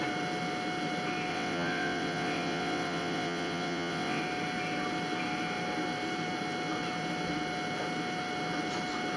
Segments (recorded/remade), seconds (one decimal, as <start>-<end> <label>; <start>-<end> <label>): 0.0-1.3 recorded; 1.3-4.2 remade; 4.2-9.2 recorded